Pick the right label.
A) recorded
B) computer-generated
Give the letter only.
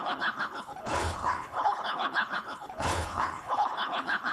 B